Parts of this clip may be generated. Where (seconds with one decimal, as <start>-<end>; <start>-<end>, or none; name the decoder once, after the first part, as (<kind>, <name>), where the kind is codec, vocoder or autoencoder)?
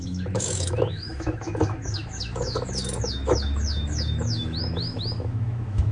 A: 0.0-5.9 (autoencoder, DAC-VAE)